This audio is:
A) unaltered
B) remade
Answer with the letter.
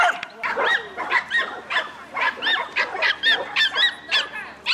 A